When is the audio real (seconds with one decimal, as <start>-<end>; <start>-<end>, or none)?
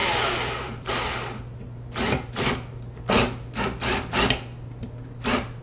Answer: 0.9-5.6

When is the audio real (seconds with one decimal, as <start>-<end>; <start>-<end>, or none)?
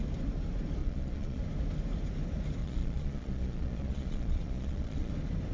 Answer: 0.0-0.8; 1.4-2.6; 5.1-5.5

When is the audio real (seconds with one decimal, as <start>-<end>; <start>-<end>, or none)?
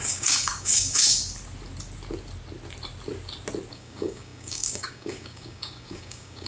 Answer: 1.2-3.7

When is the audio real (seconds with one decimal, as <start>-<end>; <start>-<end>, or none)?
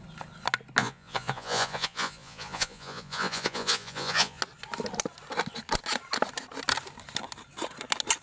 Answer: 0.0-0.8; 4.4-8.2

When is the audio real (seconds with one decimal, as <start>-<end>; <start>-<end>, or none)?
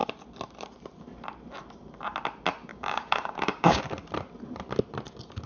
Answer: 0.0-2.7; 3.8-5.5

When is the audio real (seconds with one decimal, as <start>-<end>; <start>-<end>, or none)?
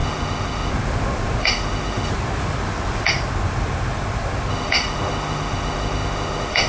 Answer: 0.7-1.4; 2.1-4.5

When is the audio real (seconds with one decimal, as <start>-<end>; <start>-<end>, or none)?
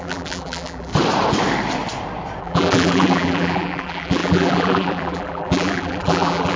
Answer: 0.9-2.4